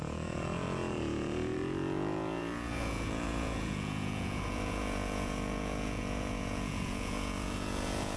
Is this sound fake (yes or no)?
yes